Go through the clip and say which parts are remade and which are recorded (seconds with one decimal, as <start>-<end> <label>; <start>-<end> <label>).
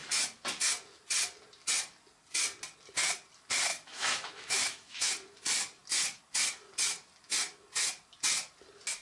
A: 0.0-3.7 recorded; 3.7-5.1 remade; 5.1-9.0 recorded